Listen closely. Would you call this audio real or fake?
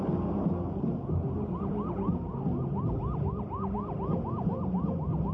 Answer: real